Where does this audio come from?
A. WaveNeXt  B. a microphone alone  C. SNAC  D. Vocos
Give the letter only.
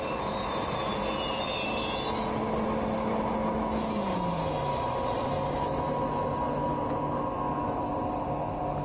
B